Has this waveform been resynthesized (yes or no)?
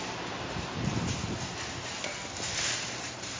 yes